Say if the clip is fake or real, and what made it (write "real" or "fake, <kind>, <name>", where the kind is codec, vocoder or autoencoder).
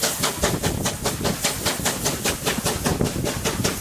real